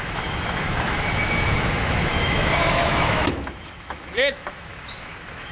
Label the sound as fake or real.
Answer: fake